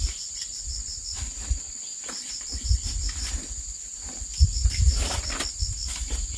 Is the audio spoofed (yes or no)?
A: no